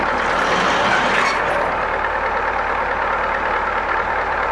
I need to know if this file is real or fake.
real